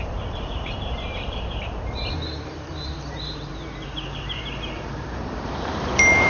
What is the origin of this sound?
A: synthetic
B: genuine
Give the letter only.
A